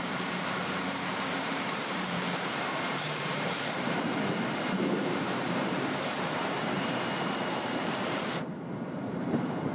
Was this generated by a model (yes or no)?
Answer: yes